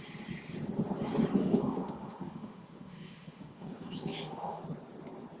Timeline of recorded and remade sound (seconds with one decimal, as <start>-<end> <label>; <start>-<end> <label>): 0.0-1.4 recorded; 1.4-4.6 remade; 4.6-5.4 recorded